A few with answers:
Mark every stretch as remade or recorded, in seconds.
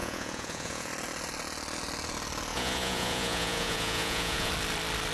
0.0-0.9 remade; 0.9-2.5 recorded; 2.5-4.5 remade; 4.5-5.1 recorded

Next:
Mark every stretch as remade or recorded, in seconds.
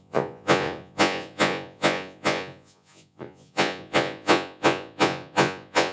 0.0-5.9 remade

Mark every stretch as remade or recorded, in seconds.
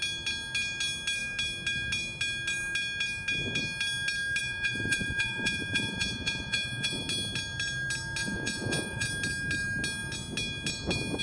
0.0-4.4 recorded; 4.4-7.0 remade; 7.0-8.2 recorded; 8.2-9.1 remade; 9.1-11.2 recorded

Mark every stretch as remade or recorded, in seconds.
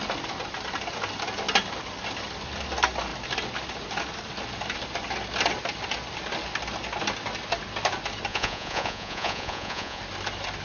0.0-8.3 recorded; 8.3-10.0 remade; 10.0-10.6 recorded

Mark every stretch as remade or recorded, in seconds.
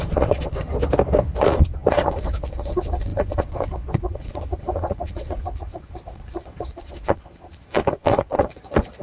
0.0-0.7 remade; 0.7-1.4 recorded; 1.4-9.0 remade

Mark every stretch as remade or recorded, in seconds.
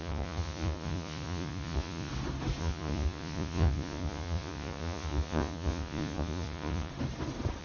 0.0-2.1 remade; 2.1-2.6 recorded; 2.6-6.9 remade; 6.9-7.6 recorded